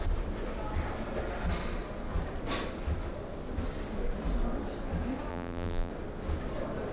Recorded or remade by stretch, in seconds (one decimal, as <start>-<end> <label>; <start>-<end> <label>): 0.0-5.3 recorded; 5.3-5.9 remade; 5.9-6.9 recorded